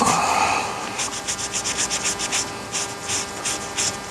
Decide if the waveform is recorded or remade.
recorded